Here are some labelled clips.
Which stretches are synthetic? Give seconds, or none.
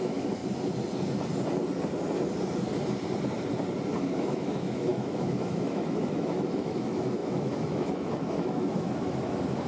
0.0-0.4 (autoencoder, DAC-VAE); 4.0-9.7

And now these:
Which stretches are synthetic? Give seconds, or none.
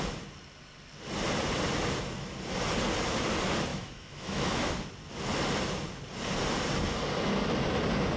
3.7-4.7 (autoencoder, DAC-VAE)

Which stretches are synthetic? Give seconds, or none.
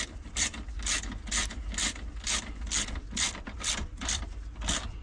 none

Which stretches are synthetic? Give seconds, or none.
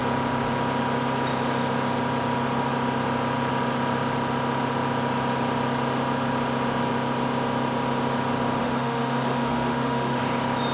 8.6-10.2 (autoencoder, DAC-VAE)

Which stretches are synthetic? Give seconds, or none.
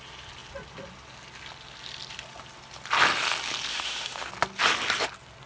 3.7-4.3 (autoencoder, DAC-VAE)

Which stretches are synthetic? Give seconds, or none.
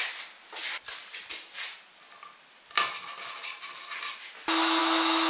4.8-5.3 (autoencoder, DAC-VAE)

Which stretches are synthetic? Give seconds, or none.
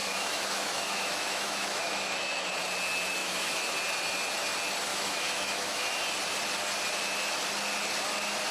0.0-2.4 (autoencoder, DAC-VAE); 3.2-3.7; 4.9-6.0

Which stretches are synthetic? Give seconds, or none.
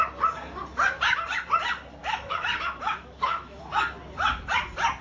2.0-3.6 (autoencoder, DAC-VAE)